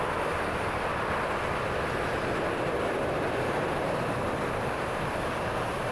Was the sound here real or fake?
fake